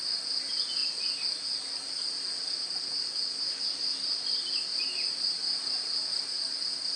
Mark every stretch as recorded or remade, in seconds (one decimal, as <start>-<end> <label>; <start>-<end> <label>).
0.0-7.0 recorded